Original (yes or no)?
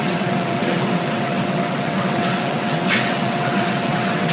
no